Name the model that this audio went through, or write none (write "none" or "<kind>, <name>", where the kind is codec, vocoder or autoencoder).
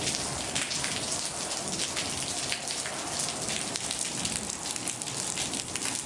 none